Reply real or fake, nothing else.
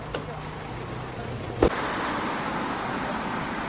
real